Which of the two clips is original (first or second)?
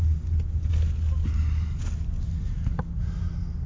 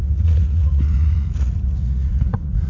first